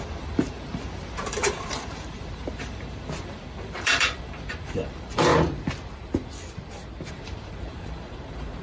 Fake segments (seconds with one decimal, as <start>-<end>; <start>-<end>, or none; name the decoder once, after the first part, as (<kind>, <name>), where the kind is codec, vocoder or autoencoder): 0.0-5.3 (vocoder, BigVGAN v2); 7.1-8.6